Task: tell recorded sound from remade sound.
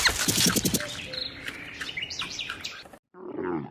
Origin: recorded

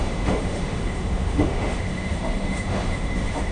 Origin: remade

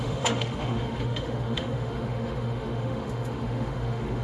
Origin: remade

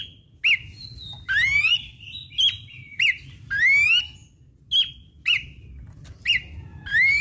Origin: recorded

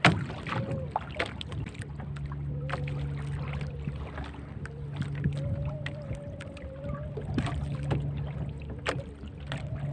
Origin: recorded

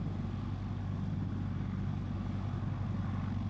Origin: recorded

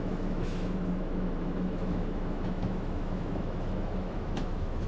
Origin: remade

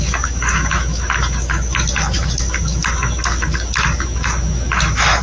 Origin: remade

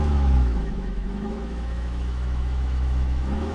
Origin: remade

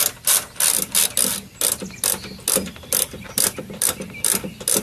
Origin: recorded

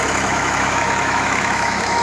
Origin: remade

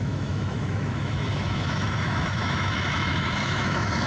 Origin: remade